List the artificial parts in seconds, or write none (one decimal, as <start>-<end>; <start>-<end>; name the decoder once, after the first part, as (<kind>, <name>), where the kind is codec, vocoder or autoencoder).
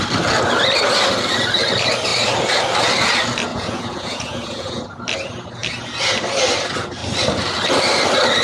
3.5-4.8 (vocoder, Vocos)